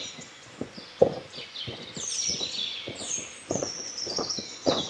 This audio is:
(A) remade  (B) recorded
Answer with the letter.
A